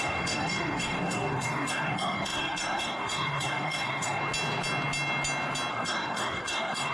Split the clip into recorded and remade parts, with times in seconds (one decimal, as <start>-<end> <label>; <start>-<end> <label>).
0.0-4.2 remade; 4.2-5.7 recorded; 5.7-6.9 remade